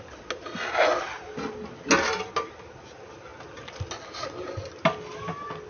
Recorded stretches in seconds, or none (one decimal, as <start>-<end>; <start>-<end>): 0.0-5.7